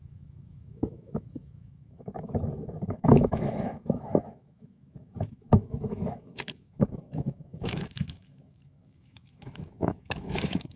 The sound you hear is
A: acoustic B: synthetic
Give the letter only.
B